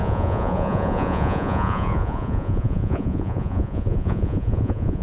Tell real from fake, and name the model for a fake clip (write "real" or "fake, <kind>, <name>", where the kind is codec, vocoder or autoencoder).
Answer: fake, vocoder, Vocos